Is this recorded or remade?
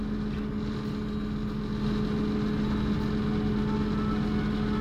recorded